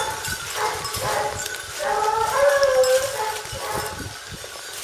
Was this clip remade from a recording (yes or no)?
no